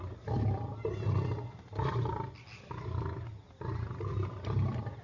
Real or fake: real